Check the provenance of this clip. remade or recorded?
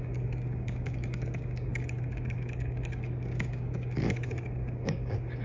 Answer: remade